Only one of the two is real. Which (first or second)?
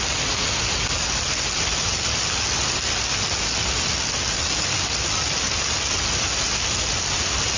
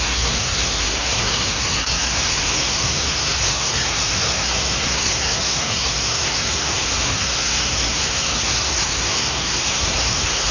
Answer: first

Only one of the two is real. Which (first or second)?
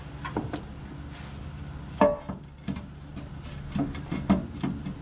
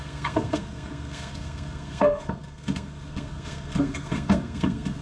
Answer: first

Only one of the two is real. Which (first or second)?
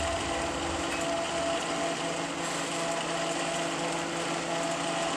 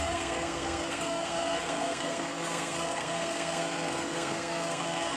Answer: first